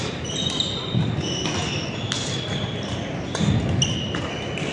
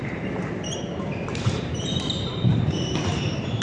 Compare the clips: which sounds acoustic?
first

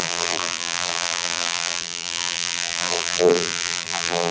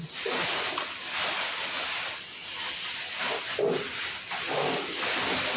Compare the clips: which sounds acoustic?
second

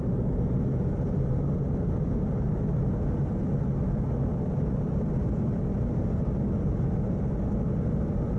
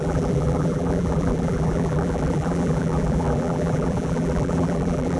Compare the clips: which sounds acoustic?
first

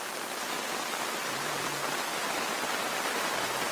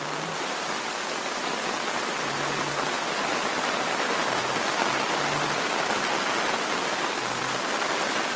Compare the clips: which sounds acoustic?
second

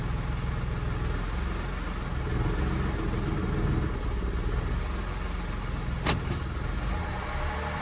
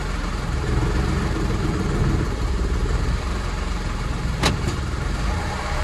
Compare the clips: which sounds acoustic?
first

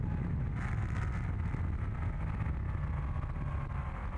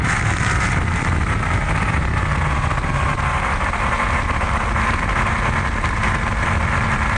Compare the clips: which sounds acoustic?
first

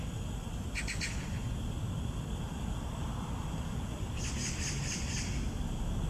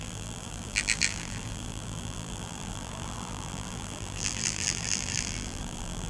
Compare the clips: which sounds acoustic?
first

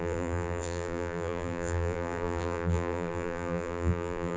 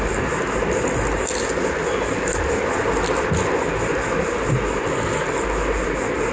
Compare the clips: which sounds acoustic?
second